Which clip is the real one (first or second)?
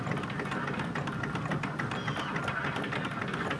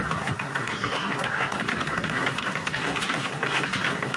first